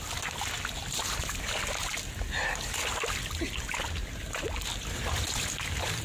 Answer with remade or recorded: recorded